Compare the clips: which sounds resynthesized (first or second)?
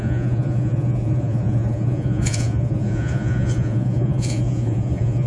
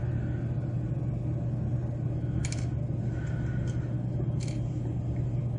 first